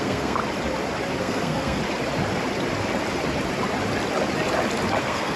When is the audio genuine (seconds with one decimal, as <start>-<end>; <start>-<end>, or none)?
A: 0.4-1.2; 1.8-5.0